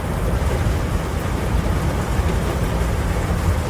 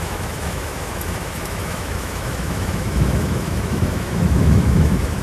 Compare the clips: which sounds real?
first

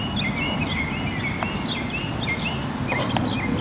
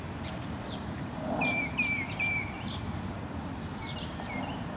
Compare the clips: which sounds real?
first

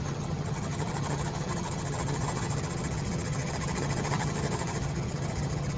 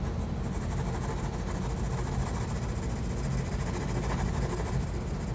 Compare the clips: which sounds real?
second